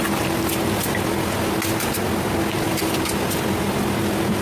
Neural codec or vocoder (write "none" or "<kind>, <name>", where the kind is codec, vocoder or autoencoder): none